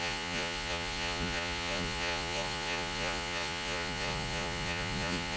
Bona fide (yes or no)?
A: no